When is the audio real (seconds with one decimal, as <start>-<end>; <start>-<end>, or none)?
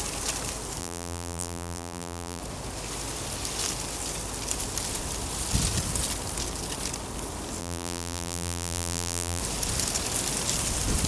0.0-0.8; 2.4-7.6; 9.4-11.1